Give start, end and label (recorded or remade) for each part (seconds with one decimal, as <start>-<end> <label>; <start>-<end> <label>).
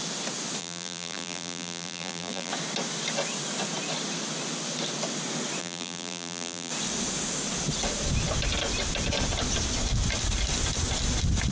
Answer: 0.0-0.6 recorded; 0.6-2.5 remade; 2.5-5.6 recorded; 5.6-6.7 remade; 6.7-11.5 recorded